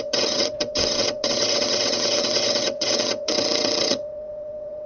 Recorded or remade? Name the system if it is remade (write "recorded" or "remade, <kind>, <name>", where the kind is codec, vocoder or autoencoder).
remade, vocoder, WaveNeXt